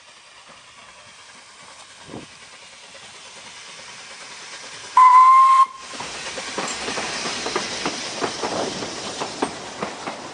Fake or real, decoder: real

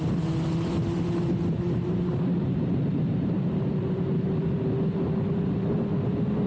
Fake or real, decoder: fake, vocoder, BigVGAN v2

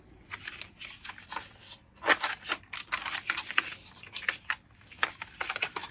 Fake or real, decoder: real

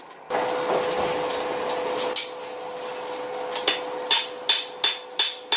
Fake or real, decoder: real